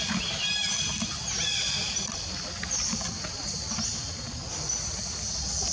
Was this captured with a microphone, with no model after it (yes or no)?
yes